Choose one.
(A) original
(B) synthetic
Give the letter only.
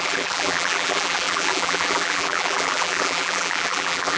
B